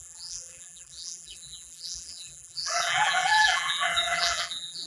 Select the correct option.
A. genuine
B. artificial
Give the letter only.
B